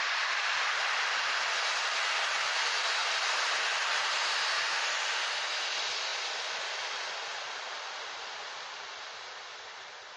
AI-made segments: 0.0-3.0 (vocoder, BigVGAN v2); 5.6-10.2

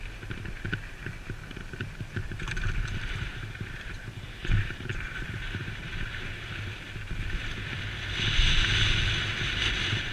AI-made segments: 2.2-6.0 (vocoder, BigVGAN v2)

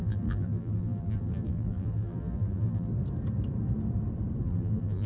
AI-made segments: 0.0-2.9 (vocoder, BigVGAN v2); 4.4-5.1

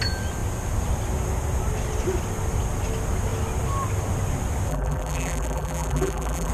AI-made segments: 4.7-6.5 (vocoder, BigVGAN v2)

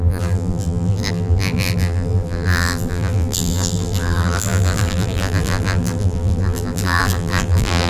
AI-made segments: 0.0-7.9 (vocoder, BigVGAN v2)

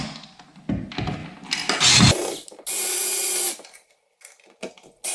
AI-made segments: none